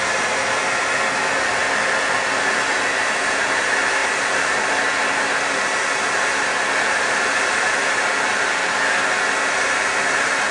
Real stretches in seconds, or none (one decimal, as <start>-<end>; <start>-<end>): 0.0-10.5

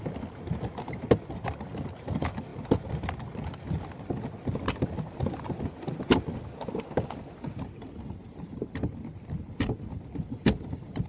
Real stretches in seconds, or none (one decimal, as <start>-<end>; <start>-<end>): 0.0-11.1